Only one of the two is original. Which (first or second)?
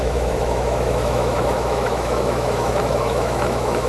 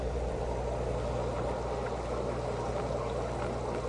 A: second